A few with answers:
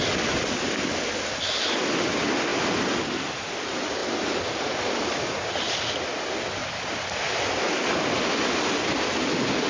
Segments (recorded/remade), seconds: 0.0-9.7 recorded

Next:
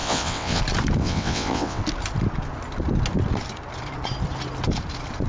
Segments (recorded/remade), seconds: 0.0-0.6 remade; 0.6-1.0 recorded; 1.0-1.8 remade; 1.8-5.3 recorded

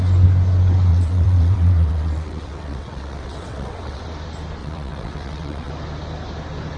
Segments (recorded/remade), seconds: 0.0-0.9 recorded; 0.9-4.0 remade; 4.0-4.6 recorded; 4.6-5.7 remade; 5.7-6.8 recorded